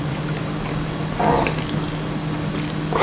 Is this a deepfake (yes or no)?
no